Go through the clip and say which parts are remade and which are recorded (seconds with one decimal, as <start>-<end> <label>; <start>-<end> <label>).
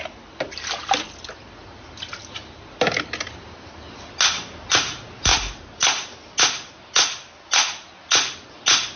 0.0-9.0 recorded